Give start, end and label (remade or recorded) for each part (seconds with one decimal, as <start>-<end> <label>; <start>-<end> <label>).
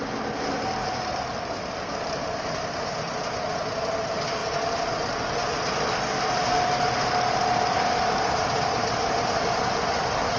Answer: 0.0-10.4 recorded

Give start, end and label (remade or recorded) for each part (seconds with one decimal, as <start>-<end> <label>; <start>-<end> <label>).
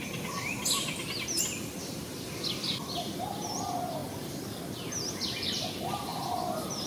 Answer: 0.0-6.9 recorded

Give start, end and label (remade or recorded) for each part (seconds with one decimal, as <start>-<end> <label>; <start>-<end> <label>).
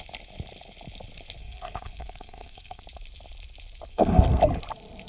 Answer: 0.0-1.4 recorded; 1.4-2.8 remade; 2.8-3.9 recorded; 3.9-4.4 remade; 4.4-5.1 recorded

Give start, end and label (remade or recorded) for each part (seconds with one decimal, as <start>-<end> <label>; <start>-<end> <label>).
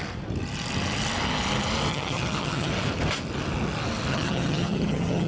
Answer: 0.0-1.9 recorded; 1.9-2.7 remade; 2.7-4.1 recorded; 4.1-5.3 remade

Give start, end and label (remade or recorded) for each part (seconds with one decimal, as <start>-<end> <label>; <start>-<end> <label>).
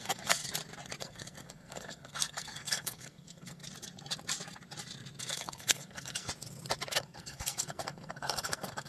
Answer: 0.0-0.4 remade; 0.4-1.0 recorded; 1.0-3.6 remade; 3.6-5.2 recorded; 5.2-6.3 remade; 6.3-6.9 recorded; 6.9-8.9 remade